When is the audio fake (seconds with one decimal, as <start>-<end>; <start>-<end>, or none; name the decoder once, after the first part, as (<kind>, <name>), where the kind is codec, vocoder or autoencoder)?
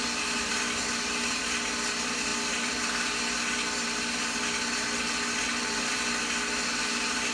none